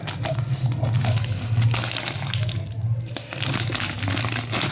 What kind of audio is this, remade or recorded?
recorded